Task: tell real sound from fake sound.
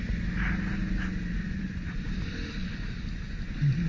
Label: real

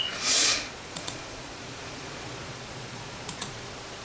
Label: fake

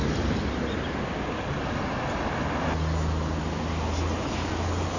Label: real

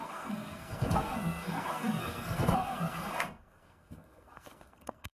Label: fake